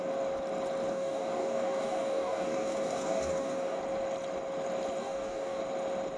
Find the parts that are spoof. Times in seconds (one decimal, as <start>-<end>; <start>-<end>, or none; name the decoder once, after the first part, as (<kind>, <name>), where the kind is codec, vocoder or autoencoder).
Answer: 0.9-3.8 (codec, DAC); 5.0-5.6